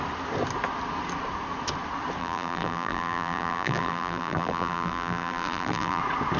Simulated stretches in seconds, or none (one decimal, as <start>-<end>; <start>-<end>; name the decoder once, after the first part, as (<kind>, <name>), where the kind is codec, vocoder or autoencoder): 2.2-6.0 (vocoder, BigVGAN v2)